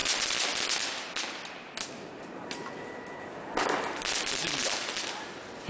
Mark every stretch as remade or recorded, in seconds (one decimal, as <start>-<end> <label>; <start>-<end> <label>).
0.0-5.7 recorded